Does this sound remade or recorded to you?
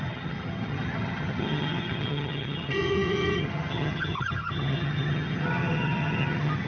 remade